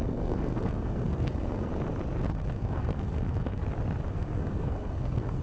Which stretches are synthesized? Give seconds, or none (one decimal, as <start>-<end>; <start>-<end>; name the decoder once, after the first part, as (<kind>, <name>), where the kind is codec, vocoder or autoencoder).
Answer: 0.0-1.7 (codec, SNAC); 2.3-3.6; 4.1-5.4

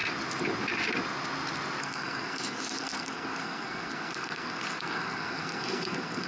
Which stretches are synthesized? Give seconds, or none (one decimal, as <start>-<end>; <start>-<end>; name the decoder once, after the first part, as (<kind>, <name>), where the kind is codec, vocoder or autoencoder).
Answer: 1.8-6.3 (codec, SNAC)

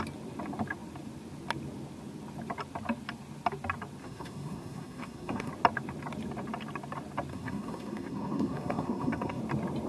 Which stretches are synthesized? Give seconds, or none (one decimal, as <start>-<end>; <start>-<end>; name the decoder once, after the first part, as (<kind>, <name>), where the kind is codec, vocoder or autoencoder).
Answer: 4.0-5.5 (codec, SNAC); 7.3-9.4

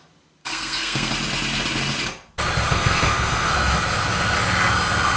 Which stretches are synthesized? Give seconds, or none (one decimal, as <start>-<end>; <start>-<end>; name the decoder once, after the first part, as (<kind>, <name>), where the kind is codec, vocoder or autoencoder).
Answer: 0.4-1.1 (codec, SNAC); 2.7-3.5

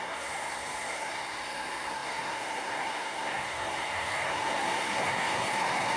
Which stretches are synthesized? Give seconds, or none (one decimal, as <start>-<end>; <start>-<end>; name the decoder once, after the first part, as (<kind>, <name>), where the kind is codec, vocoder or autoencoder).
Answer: 0.0-6.0 (codec, SNAC)

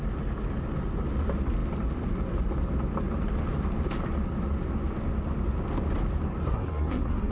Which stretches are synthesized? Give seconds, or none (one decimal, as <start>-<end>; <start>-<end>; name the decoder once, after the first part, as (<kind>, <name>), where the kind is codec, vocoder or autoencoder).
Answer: 6.4-7.3 (codec, SNAC)

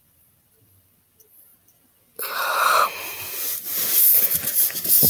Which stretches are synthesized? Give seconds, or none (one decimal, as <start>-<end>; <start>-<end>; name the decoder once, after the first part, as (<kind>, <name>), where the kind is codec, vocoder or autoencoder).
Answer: none